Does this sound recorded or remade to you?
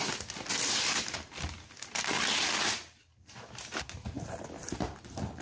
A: recorded